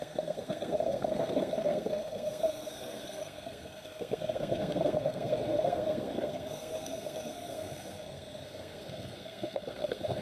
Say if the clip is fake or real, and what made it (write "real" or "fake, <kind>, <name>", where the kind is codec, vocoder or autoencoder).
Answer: fake, codec, SNAC